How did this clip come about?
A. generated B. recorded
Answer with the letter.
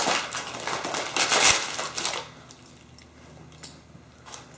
B